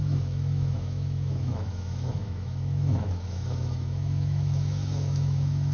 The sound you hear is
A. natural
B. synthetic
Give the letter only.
B